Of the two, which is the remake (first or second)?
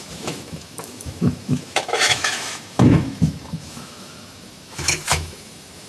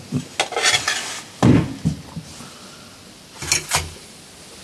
first